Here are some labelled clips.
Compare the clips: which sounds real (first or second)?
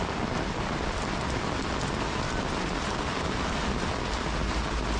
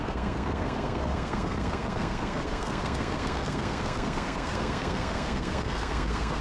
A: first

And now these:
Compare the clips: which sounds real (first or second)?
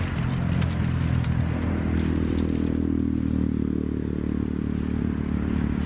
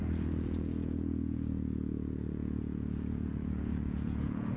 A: first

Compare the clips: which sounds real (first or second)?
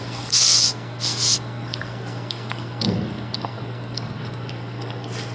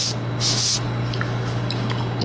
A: second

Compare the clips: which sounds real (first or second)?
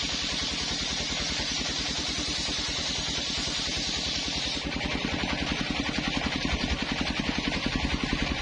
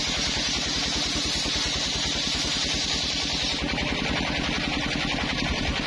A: second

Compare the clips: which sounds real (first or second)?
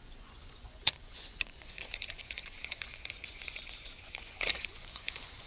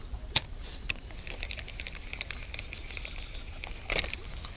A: second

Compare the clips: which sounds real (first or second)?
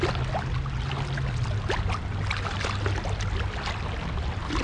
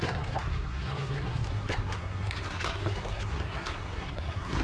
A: first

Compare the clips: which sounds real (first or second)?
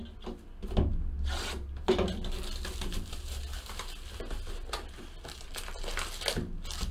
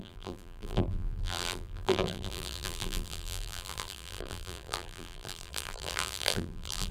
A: first